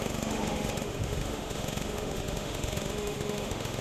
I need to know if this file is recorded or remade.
remade